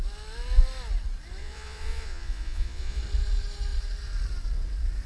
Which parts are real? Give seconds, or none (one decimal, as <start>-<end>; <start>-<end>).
0.0-1.4; 3.0-5.1